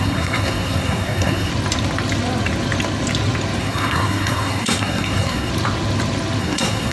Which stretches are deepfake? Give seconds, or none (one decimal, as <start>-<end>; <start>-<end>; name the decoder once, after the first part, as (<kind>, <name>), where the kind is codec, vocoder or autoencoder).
0.0-1.5 (codec, SNAC); 3.6-5.5; 6.4-6.9